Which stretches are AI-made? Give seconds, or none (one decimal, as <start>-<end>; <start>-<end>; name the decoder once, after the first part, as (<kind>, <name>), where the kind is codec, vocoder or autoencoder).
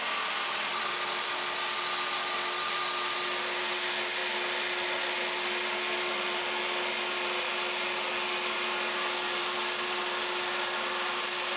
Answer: none